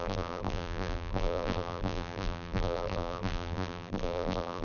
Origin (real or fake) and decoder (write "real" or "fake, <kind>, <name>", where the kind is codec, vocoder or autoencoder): fake, vocoder, BigVGAN v2